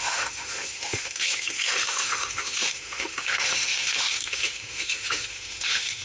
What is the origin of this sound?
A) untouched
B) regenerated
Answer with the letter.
B